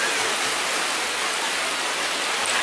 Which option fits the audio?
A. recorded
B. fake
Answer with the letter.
A